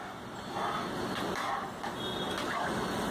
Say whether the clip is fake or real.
real